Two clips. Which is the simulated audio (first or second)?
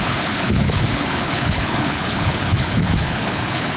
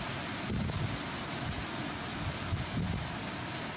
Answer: first